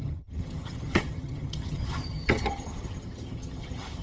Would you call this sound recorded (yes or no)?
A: no